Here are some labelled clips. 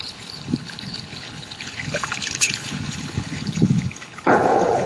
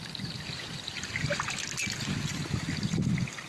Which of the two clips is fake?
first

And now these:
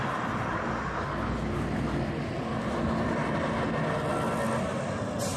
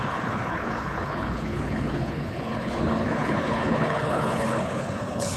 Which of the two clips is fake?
second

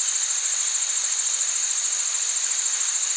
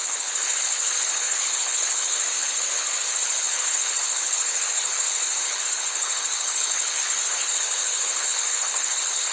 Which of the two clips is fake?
second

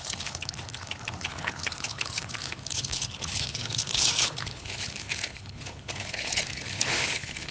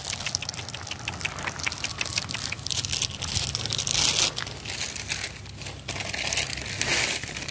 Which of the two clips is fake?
first